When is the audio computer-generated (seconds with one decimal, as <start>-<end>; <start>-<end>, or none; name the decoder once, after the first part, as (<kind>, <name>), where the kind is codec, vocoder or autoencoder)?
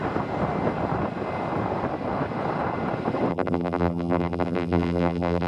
3.3-5.5 (vocoder, BigVGAN v2)